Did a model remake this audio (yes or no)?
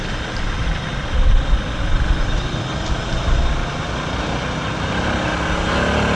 no